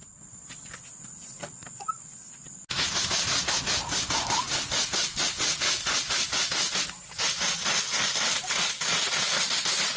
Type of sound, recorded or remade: recorded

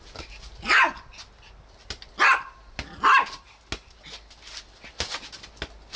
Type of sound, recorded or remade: recorded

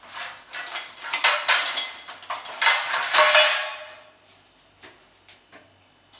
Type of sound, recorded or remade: recorded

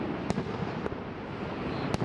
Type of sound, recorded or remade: recorded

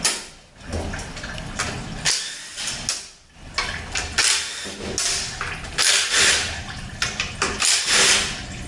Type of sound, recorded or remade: recorded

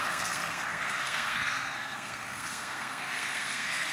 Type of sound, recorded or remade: remade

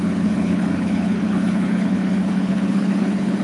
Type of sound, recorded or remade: remade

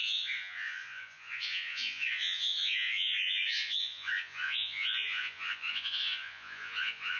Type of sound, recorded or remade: remade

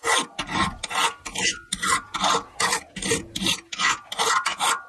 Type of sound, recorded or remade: recorded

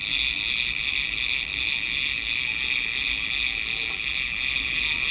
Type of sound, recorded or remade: recorded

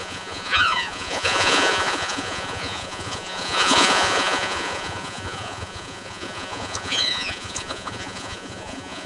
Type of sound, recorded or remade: remade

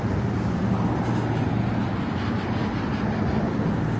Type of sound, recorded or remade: recorded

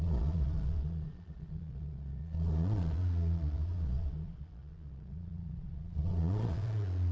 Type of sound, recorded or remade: remade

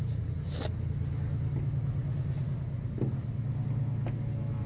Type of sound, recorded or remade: recorded